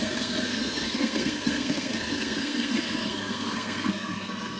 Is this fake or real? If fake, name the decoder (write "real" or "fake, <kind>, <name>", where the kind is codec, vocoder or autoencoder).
fake, codec, SNAC